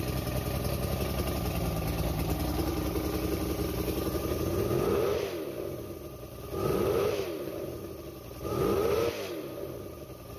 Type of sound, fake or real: real